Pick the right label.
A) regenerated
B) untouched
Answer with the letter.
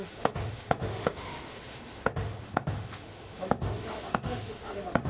A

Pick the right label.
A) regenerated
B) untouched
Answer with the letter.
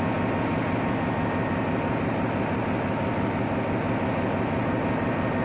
B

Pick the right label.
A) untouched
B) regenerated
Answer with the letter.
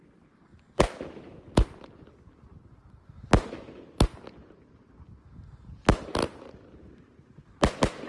A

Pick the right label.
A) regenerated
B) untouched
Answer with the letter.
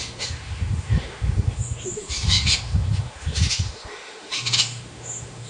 A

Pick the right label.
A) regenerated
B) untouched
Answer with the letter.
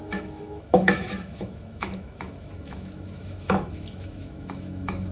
A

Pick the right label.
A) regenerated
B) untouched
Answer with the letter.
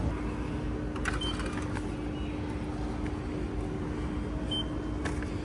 B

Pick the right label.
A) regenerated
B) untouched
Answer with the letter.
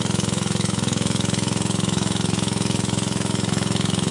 A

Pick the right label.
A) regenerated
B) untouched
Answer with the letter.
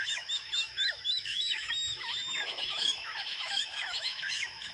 A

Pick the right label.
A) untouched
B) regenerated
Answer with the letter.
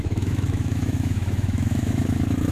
B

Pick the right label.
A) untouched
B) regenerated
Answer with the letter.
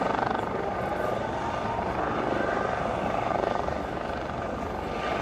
A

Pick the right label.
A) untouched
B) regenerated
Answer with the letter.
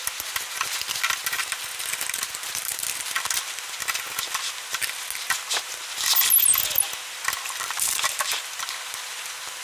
A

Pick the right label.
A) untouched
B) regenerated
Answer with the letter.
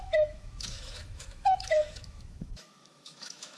B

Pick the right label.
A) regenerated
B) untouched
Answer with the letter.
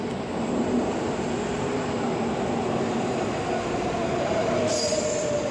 B